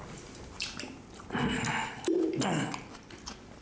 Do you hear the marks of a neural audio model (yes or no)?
no